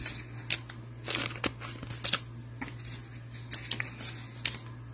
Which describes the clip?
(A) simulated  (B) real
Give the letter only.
B